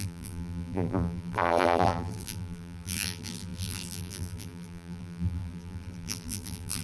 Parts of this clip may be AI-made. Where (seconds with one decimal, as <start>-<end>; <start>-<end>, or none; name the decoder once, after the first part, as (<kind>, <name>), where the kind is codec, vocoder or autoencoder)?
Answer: 0.0-6.8 (vocoder, BigVGAN v2)